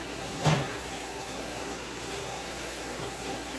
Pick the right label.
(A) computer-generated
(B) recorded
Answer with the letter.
A